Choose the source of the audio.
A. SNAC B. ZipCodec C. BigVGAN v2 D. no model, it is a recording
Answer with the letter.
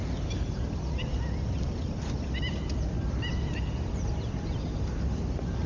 D